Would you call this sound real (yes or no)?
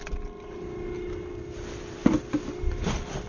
yes